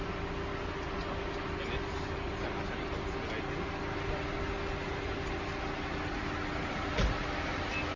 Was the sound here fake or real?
real